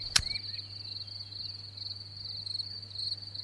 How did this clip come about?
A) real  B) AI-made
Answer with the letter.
A